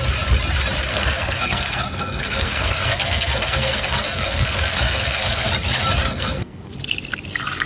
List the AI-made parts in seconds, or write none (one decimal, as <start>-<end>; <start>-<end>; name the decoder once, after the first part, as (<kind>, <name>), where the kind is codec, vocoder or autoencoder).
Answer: 0.9-5.5 (codec, SNAC); 6.0-6.7